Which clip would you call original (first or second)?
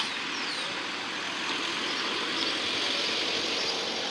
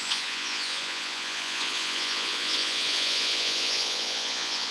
first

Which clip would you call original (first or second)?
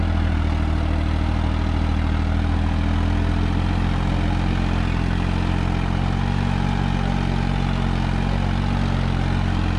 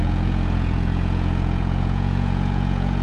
first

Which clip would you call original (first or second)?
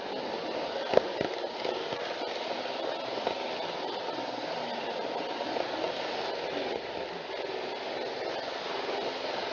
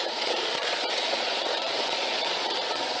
first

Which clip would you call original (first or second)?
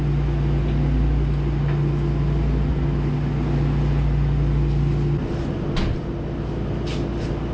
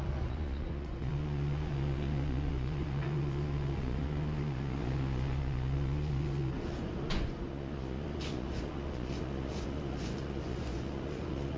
first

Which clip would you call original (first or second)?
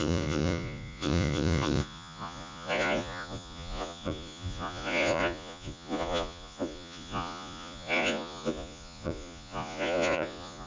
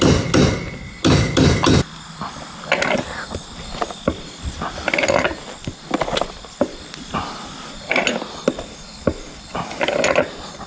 second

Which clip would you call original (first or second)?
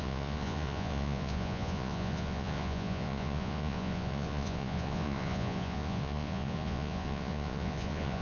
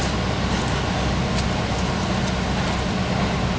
second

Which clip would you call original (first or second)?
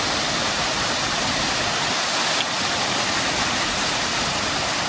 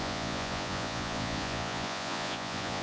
first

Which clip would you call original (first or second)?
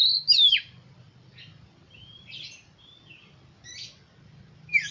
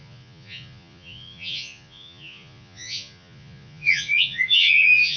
first